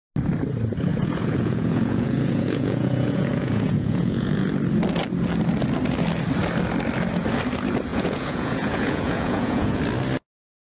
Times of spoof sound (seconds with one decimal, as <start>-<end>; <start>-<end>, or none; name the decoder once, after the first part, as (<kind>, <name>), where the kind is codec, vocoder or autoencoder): 0.9-4.5 (vocoder, Vocos); 7.9-9.8